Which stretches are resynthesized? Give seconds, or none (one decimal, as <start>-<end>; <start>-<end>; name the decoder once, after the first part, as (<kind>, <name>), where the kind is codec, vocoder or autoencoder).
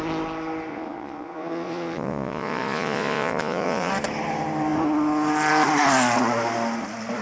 0.7-3.9 (vocoder, Vocos)